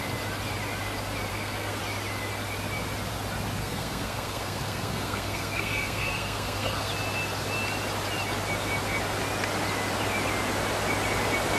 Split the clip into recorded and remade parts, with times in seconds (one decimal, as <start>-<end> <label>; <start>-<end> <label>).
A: 0.0-1.3 recorded; 1.3-1.8 remade; 1.8-3.6 recorded; 3.6-6.9 remade; 6.9-11.6 recorded